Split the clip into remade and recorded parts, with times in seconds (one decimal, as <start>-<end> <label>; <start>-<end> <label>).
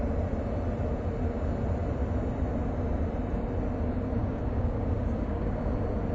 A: 0.0-4.2 recorded; 4.2-5.6 remade; 5.6-6.1 recorded